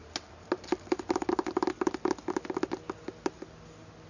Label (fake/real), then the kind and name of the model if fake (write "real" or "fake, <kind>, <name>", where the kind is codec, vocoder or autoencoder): real